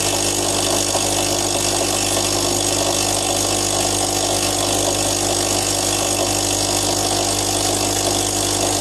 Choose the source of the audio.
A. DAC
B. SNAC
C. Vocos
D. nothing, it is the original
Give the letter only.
D